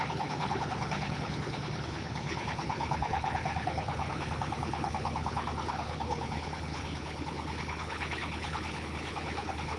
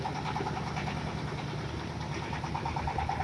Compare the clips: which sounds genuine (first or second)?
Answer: second